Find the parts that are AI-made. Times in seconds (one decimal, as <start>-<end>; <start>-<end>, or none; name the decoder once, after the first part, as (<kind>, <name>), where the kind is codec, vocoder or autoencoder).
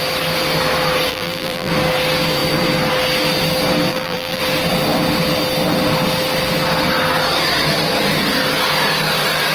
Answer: 1.1-1.7 (vocoder, BigVGAN v2); 3.9-4.4